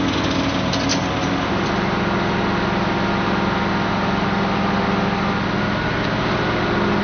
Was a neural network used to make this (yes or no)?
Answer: no